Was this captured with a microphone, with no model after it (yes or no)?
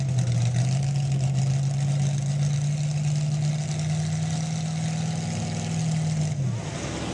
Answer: yes